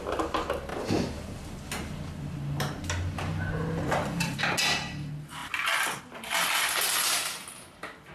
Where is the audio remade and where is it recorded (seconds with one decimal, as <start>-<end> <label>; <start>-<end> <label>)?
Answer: 0.0-8.1 recorded

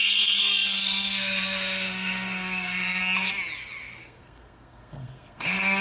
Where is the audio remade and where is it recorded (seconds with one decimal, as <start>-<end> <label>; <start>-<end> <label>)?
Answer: 0.0-3.0 remade; 3.0-4.0 recorded; 4.0-5.8 remade

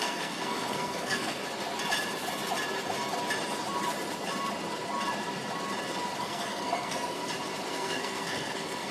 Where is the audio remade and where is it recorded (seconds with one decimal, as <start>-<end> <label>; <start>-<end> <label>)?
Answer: 0.0-1.4 remade; 1.4-6.2 recorded; 6.2-7.2 remade; 7.2-7.7 recorded; 7.7-8.9 remade